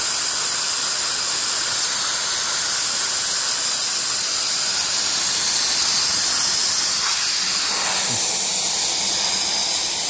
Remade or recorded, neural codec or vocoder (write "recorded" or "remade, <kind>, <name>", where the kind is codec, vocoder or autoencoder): recorded